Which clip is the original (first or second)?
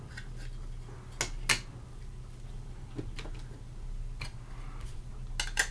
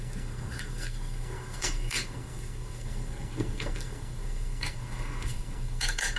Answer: first